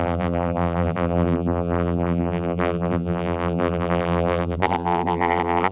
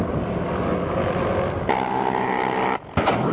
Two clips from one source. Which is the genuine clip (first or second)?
second